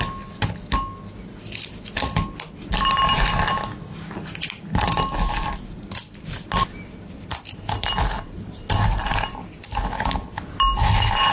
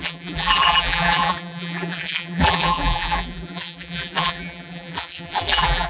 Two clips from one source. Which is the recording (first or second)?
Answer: first